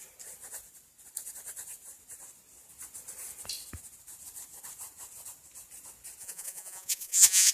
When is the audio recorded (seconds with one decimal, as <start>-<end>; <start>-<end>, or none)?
0.0-6.2